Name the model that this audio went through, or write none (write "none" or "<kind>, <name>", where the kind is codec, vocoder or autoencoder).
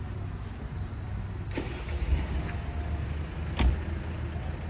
none